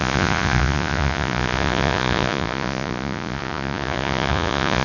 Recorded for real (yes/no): no